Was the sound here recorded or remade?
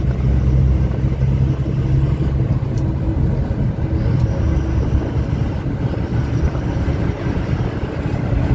recorded